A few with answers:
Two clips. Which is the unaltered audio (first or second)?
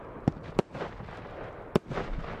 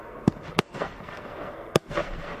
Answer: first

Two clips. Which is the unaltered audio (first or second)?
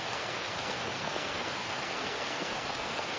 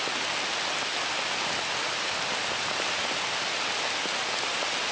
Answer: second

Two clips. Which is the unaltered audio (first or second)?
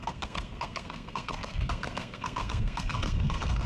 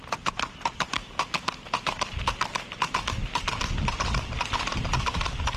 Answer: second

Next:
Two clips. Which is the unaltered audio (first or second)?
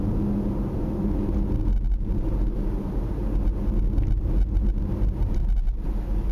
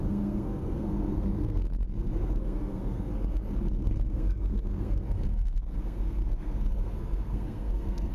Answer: first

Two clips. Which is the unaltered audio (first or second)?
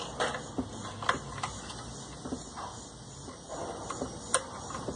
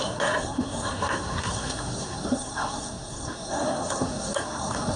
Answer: first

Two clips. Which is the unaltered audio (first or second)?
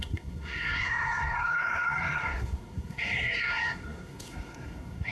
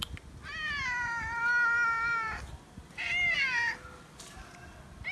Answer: second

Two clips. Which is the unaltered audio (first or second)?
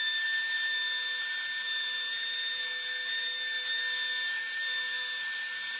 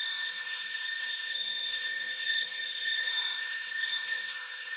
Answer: first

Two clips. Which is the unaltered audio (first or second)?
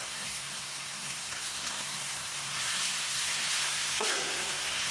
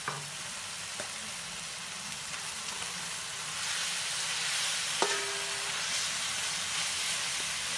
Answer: second